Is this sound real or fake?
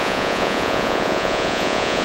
fake